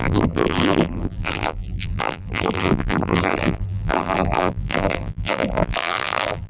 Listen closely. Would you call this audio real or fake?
fake